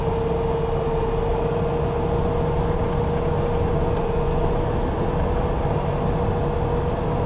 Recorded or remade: recorded